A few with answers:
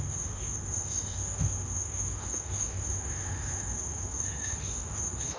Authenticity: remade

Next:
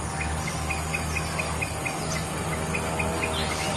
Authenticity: recorded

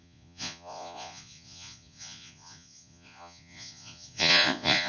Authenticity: remade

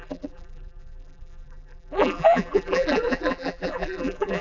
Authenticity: remade